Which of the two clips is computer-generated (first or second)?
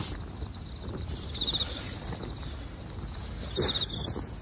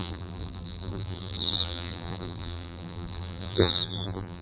second